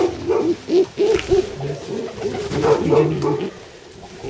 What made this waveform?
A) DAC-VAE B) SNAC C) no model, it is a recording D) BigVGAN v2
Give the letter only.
C